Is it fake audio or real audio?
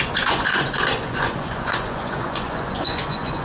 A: fake